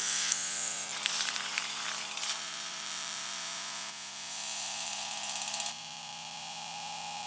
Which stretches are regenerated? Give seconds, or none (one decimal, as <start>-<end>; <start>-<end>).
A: 0.9-2.0; 2.7-3.4